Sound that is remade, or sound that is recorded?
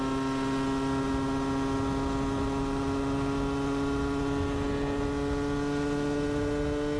recorded